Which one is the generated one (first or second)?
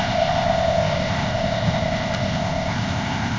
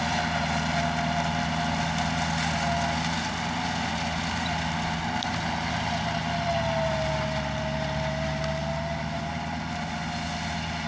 first